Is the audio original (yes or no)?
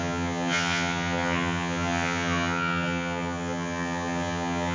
no